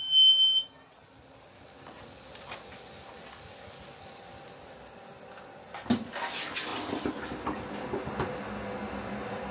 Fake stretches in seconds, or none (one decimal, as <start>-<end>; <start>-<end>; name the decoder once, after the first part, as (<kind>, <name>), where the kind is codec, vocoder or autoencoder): none